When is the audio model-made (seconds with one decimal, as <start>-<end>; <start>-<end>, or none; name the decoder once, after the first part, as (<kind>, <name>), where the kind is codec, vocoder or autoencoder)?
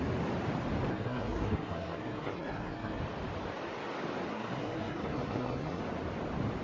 0.9-3.0 (codec, SNAC); 4.3-5.8